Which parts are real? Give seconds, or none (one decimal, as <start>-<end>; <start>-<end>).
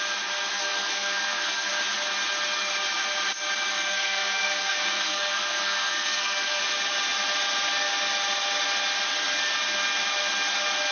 0.0-0.5; 1.7-3.7; 6.6-10.9